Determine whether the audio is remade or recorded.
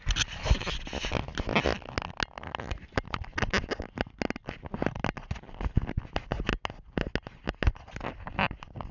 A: recorded